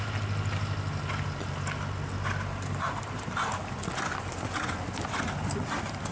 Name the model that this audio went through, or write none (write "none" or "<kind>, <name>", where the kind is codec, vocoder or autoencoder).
none